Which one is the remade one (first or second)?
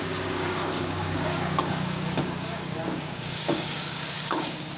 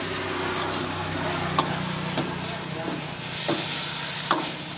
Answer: first